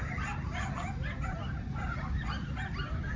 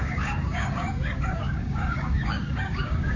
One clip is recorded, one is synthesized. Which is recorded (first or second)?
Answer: first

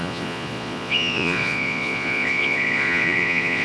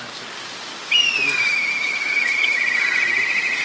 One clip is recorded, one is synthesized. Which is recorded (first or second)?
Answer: second